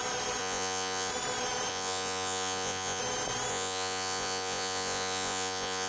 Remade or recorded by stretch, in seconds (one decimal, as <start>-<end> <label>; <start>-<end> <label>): 0.0-0.4 recorded; 0.4-1.1 remade; 1.1-1.7 recorded; 1.7-3.0 remade; 3.0-3.5 recorded; 3.5-5.9 remade